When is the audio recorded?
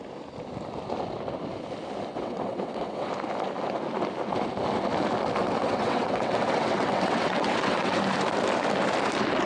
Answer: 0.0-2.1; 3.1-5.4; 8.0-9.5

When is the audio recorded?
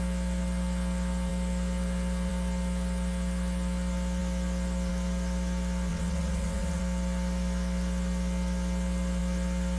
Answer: 0.0-5.9; 6.8-9.8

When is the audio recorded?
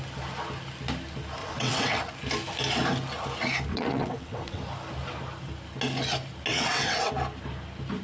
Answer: 0.0-1.4; 2.0-3.7; 4.6-6.5; 7.1-8.0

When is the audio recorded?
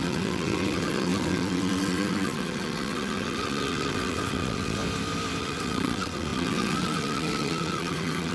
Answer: 4.8-5.4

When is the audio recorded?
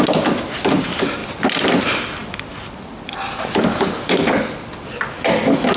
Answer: 0.0-5.8